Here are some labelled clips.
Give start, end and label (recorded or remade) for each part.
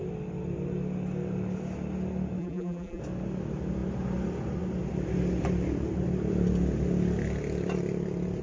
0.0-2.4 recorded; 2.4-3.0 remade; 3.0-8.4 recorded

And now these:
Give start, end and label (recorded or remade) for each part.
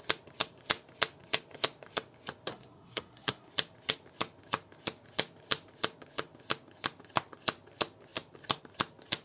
0.0-2.5 recorded; 2.5-3.5 remade; 3.5-9.2 recorded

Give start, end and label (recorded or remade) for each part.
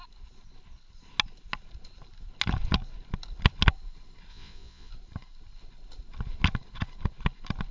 0.0-4.3 recorded; 4.3-4.9 remade; 4.9-7.7 recorded